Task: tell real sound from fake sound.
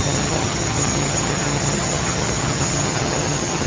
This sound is fake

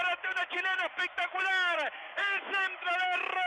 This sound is fake